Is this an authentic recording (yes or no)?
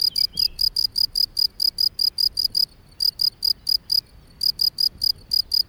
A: yes